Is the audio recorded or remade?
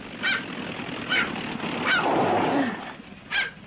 recorded